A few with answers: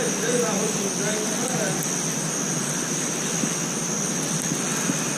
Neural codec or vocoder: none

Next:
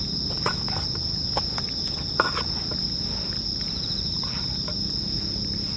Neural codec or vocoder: none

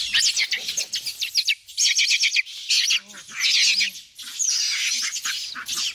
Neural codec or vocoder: none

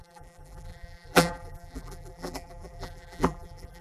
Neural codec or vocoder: vocoder, BigVGAN v2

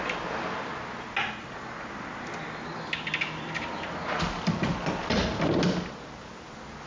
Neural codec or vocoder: none